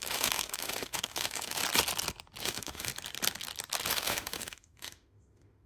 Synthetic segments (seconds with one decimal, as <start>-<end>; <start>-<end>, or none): 0.0-1.6; 2.4-2.9; 3.9-5.7